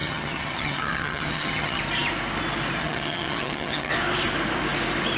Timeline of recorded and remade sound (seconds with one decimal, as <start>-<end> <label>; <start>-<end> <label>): 0.0-1.8 remade; 1.8-2.8 recorded; 2.8-3.9 remade; 3.9-5.2 recorded